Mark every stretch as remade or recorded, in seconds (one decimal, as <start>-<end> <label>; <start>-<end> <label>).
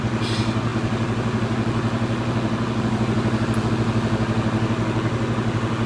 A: 0.0-5.9 recorded